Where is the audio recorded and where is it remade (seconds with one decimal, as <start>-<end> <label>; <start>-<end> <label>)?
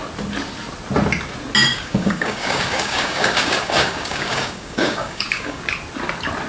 0.0-1.7 recorded; 1.7-5.6 remade; 5.6-6.5 recorded